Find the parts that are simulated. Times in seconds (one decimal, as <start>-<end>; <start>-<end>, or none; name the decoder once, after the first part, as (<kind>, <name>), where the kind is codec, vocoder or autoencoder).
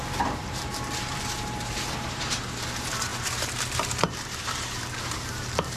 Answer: 0.0-5.8 (vocoder, BigVGAN v2)